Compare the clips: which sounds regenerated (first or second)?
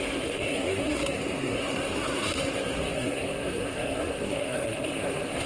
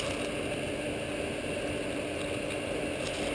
first